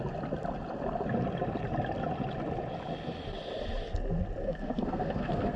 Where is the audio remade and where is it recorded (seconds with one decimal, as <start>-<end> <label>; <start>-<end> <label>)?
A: 0.0-4.4 recorded; 4.4-5.6 remade